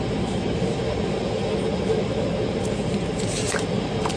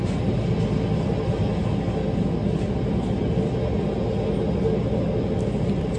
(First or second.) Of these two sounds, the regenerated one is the first